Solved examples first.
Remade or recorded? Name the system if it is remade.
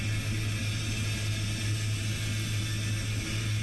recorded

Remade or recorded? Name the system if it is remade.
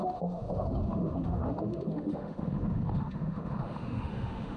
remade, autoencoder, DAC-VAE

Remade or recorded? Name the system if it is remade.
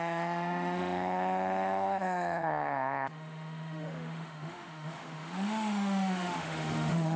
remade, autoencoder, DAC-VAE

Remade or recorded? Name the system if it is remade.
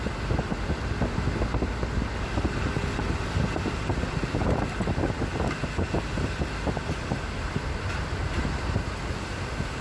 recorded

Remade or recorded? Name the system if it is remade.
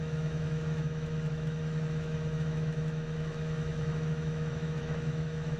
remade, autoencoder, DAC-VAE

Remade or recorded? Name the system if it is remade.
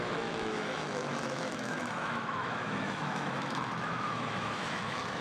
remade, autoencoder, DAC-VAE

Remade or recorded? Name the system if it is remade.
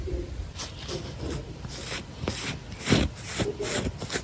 recorded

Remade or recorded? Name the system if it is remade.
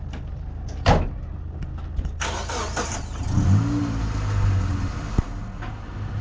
recorded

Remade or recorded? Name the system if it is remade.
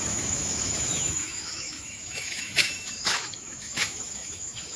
remade, autoencoder, DAC-VAE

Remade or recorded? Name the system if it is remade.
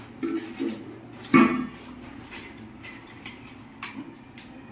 recorded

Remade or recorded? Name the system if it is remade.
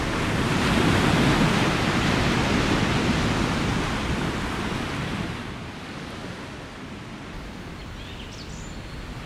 recorded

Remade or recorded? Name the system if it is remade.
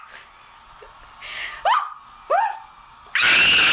recorded